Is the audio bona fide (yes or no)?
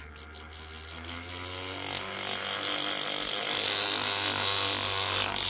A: yes